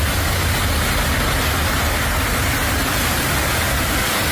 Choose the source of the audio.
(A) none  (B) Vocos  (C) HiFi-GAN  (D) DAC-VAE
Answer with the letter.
A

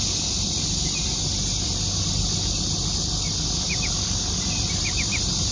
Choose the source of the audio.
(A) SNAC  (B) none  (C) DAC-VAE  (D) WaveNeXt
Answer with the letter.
B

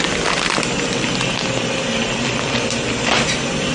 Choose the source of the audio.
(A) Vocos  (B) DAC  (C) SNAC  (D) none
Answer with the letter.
D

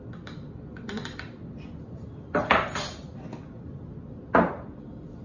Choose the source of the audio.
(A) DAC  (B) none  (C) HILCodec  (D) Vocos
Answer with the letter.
B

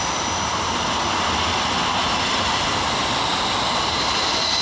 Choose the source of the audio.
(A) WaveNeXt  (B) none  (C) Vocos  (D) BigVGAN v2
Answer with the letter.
B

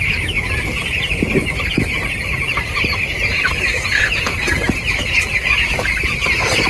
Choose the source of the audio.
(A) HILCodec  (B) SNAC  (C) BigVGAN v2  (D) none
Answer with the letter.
C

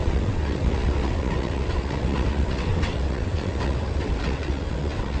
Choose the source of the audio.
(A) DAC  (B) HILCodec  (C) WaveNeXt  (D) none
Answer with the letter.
C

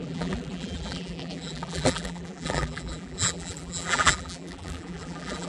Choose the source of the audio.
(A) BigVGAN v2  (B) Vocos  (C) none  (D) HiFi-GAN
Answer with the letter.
A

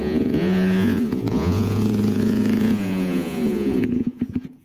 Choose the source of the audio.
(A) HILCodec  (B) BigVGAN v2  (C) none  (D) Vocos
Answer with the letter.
D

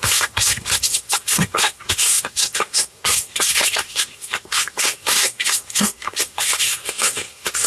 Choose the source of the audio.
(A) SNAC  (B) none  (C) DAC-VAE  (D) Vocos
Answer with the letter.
A